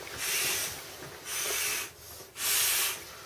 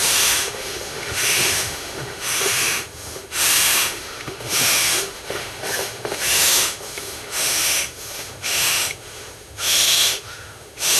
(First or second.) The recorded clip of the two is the first